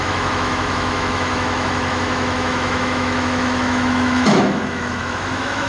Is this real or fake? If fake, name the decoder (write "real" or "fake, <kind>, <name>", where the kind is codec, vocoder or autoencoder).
fake, autoencoder, DAC-VAE